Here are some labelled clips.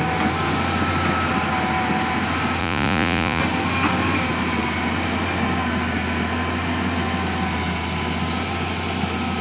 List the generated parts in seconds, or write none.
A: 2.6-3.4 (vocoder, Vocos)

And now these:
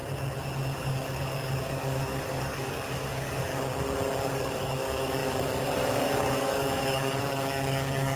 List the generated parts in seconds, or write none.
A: 0.8-3.5 (codec, DAC); 4.2-8.2

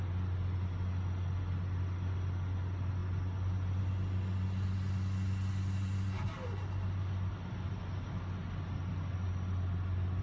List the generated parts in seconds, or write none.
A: none

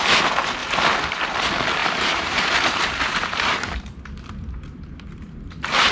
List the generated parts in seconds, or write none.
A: 0.6-1.2 (vocoder, BigVGAN v2); 1.8-3.8

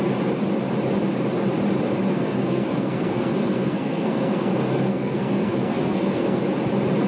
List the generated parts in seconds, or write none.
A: 2.1-6.4 (codec, SNAC)

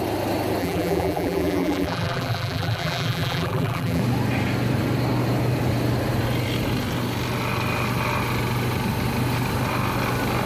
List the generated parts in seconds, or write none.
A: 0.6-4.0 (vocoder, BigVGAN v2)